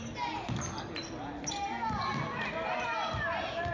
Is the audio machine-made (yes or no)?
no